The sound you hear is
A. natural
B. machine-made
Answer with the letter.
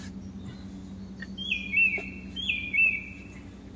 A